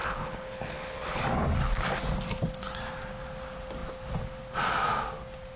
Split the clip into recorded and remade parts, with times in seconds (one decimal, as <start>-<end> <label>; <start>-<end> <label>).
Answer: 0.0-1.2 remade; 1.2-5.6 recorded